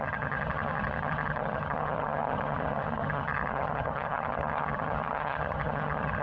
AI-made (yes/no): yes